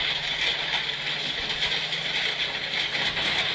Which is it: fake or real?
real